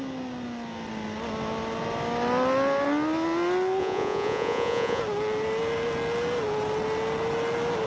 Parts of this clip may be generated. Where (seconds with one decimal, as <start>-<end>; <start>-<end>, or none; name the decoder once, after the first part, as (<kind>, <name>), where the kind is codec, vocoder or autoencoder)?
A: 3.8-5.0 (vocoder, Vocos)